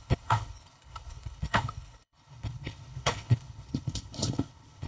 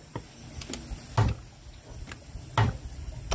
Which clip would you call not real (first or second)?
first